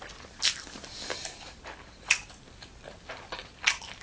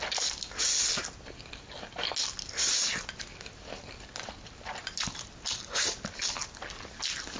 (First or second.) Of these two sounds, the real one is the second